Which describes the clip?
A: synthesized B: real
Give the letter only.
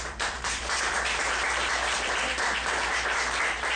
A